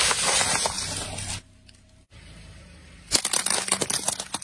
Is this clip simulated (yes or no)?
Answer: no